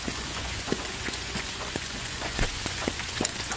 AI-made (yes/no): yes